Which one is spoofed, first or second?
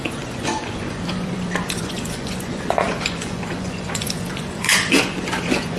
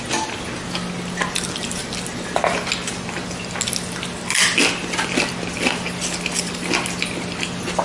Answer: first